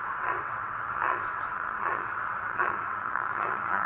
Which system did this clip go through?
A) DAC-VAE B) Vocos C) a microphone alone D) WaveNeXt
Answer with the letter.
D